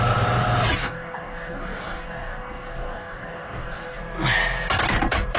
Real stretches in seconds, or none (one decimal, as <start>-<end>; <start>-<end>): 0.0-0.8; 4.0-5.4

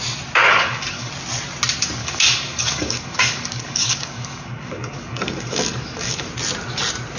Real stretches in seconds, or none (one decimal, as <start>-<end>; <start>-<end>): 0.0-0.5; 1.1-2.0; 6.3-7.2